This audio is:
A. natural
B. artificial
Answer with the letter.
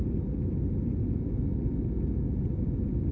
A